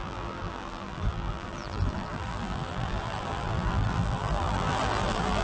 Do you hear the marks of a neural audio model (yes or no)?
yes